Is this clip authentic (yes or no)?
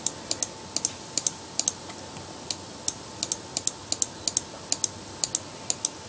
yes